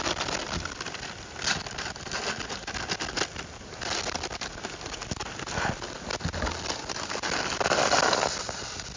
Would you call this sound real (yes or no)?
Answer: yes